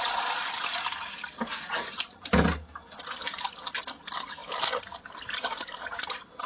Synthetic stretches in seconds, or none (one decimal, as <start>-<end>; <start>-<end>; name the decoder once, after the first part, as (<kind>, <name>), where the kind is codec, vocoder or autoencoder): none